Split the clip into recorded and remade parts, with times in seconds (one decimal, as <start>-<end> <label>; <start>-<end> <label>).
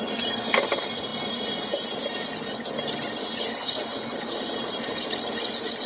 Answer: 0.0-5.9 recorded